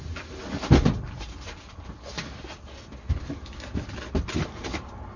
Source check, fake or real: real